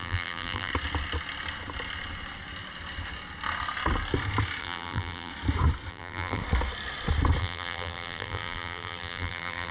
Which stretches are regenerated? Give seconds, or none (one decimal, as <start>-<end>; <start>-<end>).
0.0-0.7; 4.6-5.3; 5.9-6.4; 7.4-9.7